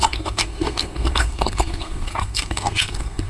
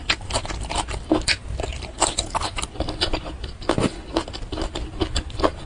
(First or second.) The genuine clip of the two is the second